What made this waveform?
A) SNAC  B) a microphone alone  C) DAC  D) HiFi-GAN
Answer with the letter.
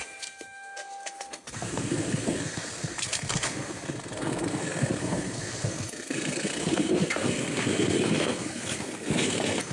A